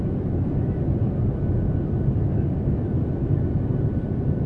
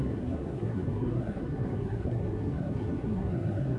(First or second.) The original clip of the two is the first